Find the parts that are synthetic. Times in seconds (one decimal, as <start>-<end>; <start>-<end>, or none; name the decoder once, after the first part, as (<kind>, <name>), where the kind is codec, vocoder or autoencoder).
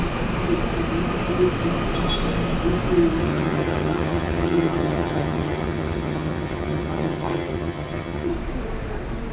3.2-8.3 (vocoder, HiFi-GAN)